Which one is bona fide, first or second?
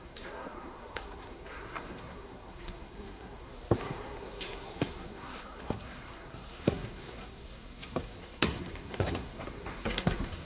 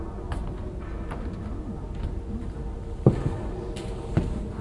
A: second